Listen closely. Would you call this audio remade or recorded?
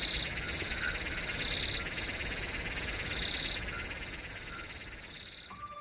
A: recorded